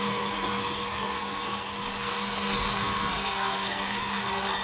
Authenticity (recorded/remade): remade